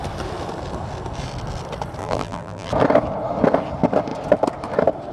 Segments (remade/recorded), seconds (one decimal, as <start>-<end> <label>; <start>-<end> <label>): 0.0-2.0 recorded; 2.0-2.7 remade; 2.7-5.1 recorded